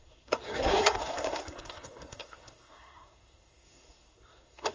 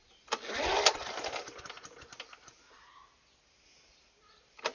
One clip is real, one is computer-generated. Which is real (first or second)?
second